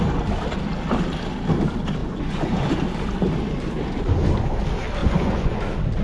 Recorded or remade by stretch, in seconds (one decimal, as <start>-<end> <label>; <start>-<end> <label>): 0.0-2.0 recorded; 2.0-2.7 remade; 2.7-5.0 recorded; 5.0-5.6 remade; 5.6-6.0 recorded